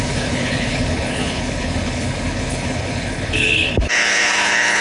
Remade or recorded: remade